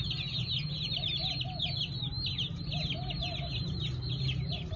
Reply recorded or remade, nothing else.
recorded